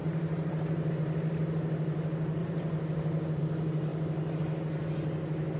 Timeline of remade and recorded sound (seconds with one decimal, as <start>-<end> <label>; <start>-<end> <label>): 0.0-0.9 remade; 0.9-2.4 recorded; 2.4-3.4 remade; 3.4-5.6 recorded